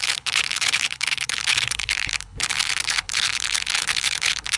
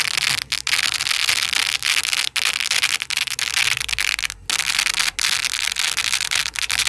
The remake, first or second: first